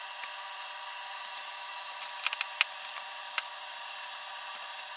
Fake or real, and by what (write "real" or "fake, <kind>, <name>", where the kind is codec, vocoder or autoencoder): real